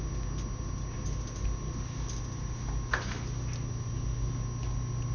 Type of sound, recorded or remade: recorded